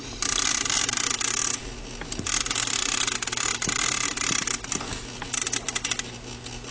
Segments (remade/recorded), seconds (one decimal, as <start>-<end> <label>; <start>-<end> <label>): 0.0-6.7 recorded